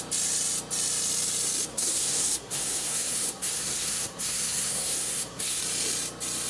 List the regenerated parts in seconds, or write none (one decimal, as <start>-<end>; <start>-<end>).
1.7-5.6